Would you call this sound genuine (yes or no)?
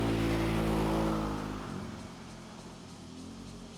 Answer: yes